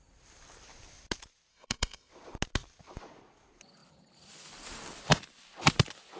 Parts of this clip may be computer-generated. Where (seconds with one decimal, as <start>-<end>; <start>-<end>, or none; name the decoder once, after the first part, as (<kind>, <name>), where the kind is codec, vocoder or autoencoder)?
1.5-2.1 (codec, SNAC)